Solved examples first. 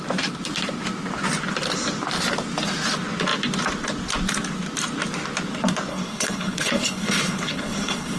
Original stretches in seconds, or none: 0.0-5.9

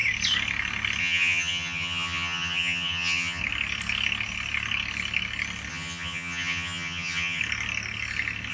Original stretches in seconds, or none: 0.0-1.0; 3.4-5.7; 7.4-8.5

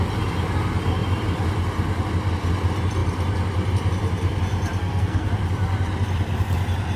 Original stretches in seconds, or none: 0.0-4.8; 5.3-7.0

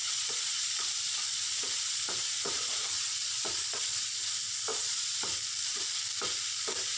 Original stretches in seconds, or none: 4.2-4.7; 5.2-7.0

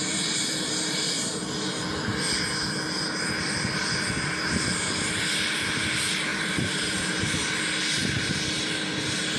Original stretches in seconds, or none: 1.3-6.3; 7.1-9.4

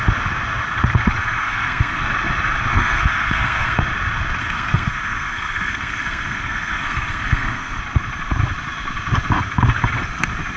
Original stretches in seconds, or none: 0.0-1.2; 2.0-2.7; 3.8-4.4; 7.8-10.6